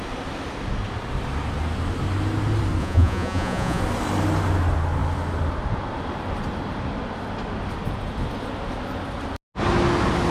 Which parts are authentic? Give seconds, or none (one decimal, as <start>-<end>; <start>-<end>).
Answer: 0.0-2.8; 3.8-10.3